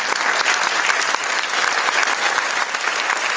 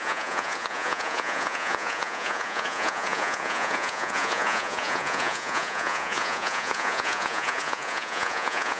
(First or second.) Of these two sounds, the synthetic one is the second